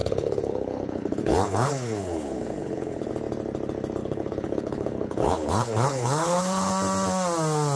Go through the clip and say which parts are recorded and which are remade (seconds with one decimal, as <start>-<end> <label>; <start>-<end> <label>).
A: 0.0-3.1 remade; 3.1-4.0 recorded; 4.0-6.7 remade; 6.7-7.8 recorded